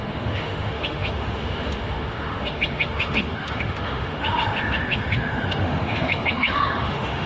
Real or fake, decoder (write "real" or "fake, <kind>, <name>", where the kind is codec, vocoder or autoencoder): fake, autoencoder, DAC-VAE